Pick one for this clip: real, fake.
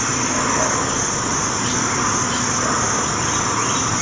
real